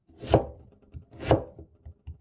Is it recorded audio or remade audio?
recorded